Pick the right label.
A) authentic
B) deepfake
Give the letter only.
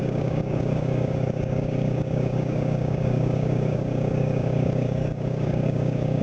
B